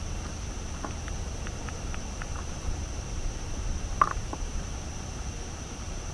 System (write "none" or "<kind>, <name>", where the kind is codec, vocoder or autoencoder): vocoder, BigVGAN v2